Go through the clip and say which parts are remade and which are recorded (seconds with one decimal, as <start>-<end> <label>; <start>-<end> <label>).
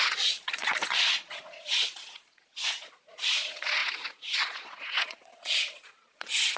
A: 0.0-6.6 remade